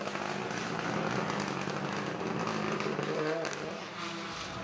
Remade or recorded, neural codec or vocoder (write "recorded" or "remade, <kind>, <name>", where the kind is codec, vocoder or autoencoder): recorded